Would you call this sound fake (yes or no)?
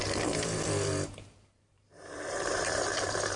yes